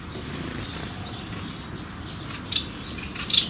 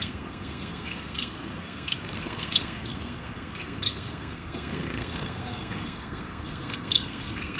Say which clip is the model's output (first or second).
second